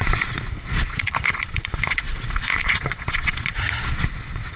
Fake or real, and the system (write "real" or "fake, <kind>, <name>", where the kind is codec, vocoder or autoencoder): fake, vocoder, Vocos